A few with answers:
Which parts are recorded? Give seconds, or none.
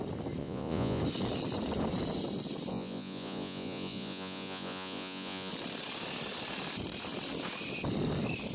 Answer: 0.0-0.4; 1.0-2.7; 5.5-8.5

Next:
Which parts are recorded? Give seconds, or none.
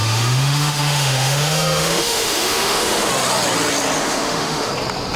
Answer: 3.1-4.0; 4.7-5.2